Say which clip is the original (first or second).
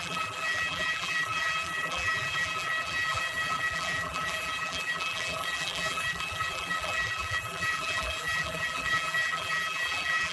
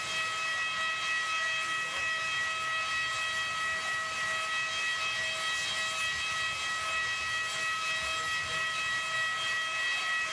second